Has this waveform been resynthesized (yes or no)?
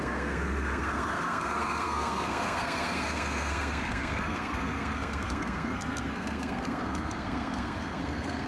yes